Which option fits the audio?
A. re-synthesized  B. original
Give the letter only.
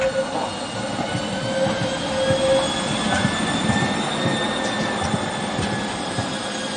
B